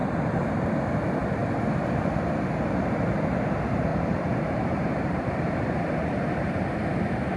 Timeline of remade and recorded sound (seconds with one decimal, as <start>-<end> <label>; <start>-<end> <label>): 0.0-0.5 remade; 0.5-3.9 recorded; 3.9-6.6 remade; 6.6-7.4 recorded